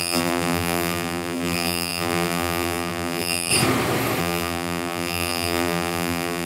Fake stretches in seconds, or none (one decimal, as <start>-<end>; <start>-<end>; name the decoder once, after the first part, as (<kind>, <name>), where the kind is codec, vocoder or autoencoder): 0.0-3.5 (vocoder, BigVGAN v2); 4.2-6.5